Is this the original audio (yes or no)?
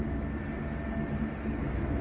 yes